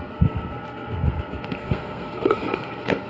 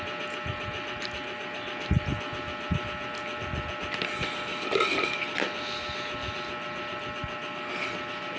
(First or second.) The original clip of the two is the second